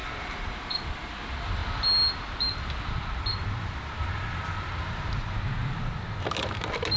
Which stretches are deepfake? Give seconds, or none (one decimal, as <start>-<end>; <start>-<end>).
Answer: 0.0-0.9